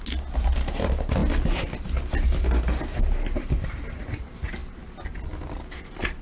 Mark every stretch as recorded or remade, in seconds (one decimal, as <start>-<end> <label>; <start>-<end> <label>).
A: 0.0-6.2 recorded